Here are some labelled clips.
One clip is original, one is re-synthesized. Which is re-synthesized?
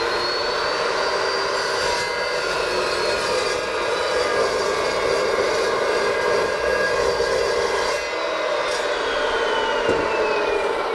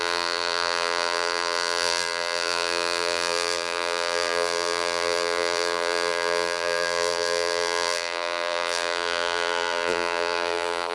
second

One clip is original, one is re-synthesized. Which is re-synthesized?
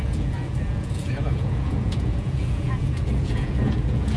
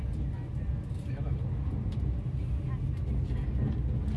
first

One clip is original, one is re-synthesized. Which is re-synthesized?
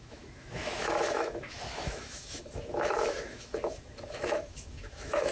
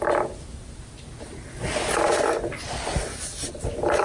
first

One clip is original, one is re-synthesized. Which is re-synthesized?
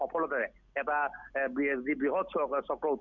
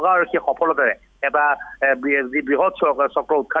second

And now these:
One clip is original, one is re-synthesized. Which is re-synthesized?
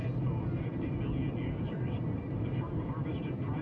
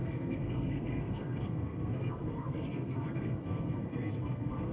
second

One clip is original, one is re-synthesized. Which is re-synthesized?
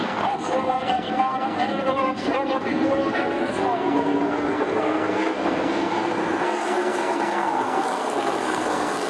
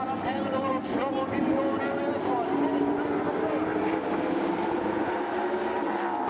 first